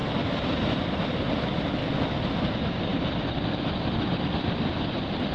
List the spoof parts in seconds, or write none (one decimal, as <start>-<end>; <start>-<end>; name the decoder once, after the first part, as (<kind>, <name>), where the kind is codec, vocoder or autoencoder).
0.0-1.8 (vocoder, BigVGAN v2); 2.4-5.3